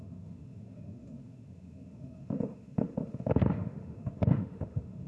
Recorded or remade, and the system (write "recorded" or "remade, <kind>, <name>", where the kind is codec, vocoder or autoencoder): remade, autoencoder, DAC-VAE